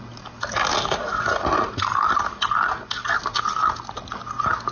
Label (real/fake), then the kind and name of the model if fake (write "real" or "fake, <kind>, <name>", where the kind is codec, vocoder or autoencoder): real